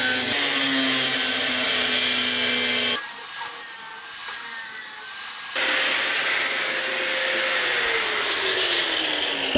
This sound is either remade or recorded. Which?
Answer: recorded